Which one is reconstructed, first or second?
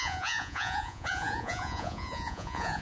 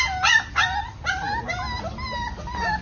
first